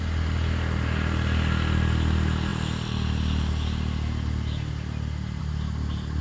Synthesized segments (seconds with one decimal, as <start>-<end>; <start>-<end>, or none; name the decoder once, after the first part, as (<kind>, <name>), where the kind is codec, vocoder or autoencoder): none